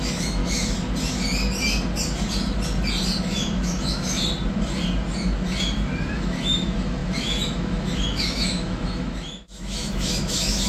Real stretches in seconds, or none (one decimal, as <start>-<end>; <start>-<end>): 0.4-3.2; 4.2-6.1